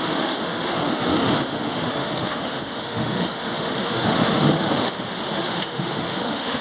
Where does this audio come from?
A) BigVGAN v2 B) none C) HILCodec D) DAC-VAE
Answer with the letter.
D